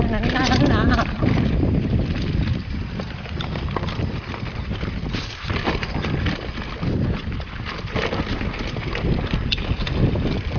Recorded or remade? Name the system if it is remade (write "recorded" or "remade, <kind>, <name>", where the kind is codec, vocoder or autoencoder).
recorded